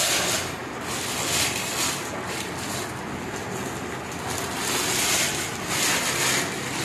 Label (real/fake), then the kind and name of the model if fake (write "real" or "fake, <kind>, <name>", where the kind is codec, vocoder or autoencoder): real